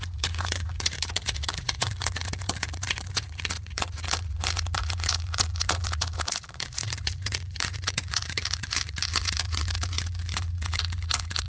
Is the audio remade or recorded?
remade